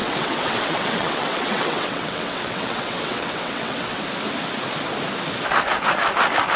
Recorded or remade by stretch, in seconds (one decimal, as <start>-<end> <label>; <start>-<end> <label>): 0.0-4.0 remade; 4.0-6.6 recorded

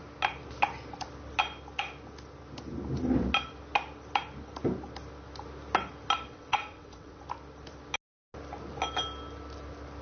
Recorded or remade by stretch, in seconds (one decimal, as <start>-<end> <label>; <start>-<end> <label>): 0.0-6.3 recorded; 6.3-7.2 remade; 7.2-10.0 recorded

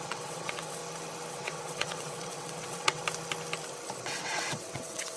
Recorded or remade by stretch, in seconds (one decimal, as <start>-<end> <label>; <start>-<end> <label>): 0.0-0.8 remade; 0.8-1.3 recorded; 1.3-3.0 remade; 3.0-4.0 recorded; 4.0-5.2 remade

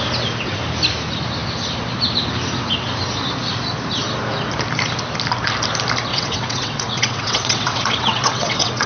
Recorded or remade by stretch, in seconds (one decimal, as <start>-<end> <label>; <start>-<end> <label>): 0.0-6.1 recorded; 6.1-8.9 remade

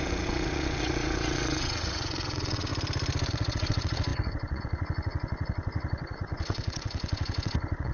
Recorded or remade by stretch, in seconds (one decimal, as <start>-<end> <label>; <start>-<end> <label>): 0.0-2.7 remade; 2.7-3.3 recorded; 3.3-7.9 remade